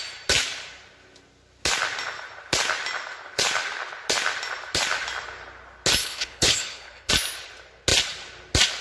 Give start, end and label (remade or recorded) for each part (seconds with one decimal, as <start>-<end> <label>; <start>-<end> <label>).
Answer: 0.0-6.0 recorded; 6.0-7.1 remade; 7.1-8.8 recorded